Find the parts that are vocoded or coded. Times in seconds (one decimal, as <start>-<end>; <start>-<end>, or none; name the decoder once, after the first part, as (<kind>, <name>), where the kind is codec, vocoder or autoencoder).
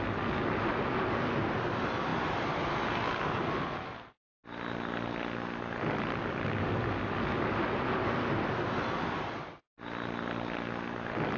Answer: none